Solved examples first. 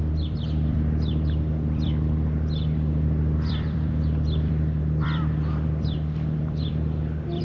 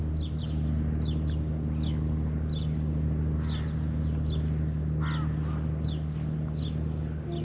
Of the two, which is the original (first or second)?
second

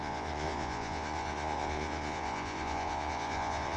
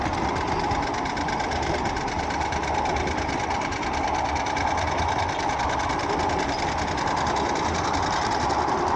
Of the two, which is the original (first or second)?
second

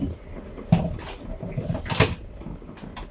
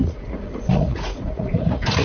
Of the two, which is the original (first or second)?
first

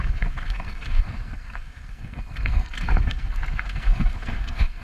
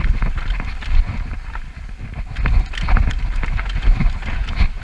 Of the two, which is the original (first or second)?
second